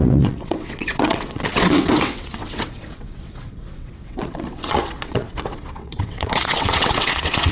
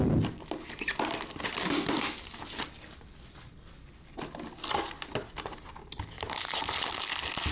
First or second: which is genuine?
second